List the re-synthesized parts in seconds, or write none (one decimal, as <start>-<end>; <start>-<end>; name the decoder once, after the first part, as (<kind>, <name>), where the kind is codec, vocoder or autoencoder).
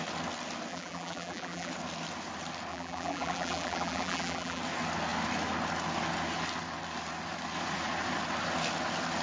0.7-1.7 (vocoder, BigVGAN v2); 2.7-4.6